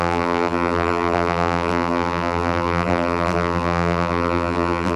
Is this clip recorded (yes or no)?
no